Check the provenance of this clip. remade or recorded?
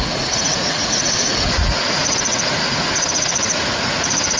remade